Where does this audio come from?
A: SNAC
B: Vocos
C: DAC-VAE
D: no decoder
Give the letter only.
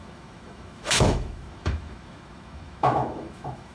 C